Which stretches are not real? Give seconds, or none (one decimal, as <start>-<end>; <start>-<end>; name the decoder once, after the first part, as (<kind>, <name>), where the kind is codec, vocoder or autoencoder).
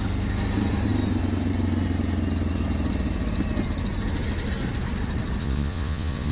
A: 5.4-6.3 (vocoder, Vocos)